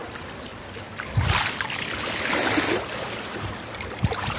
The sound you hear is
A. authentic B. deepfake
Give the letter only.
A